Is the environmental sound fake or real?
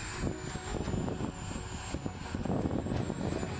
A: real